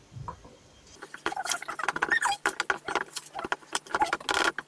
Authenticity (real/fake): real